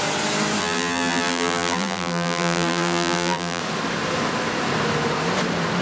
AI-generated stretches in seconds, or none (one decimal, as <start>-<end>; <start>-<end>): 0.6-3.6